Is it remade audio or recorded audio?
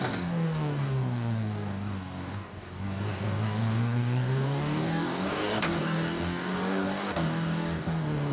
remade